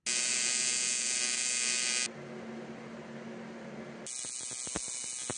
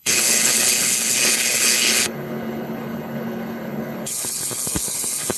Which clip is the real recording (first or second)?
first